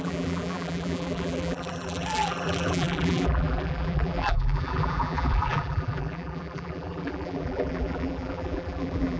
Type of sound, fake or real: fake